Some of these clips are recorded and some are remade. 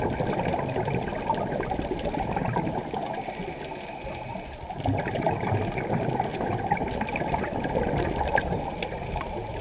recorded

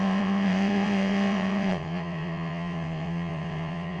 remade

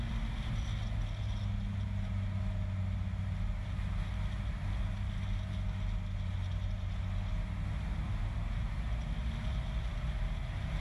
recorded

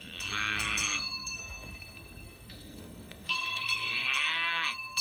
remade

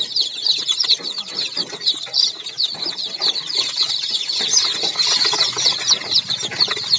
remade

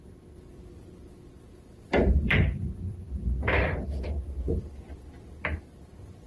remade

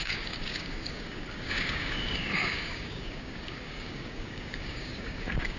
remade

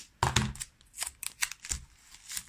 recorded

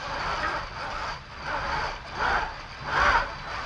recorded